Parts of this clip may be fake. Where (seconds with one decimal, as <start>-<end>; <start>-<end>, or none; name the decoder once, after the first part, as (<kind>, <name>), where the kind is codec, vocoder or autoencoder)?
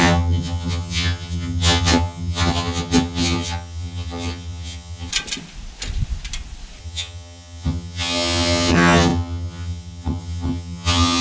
0.0-5.1 (vocoder, HiFi-GAN); 6.8-11.2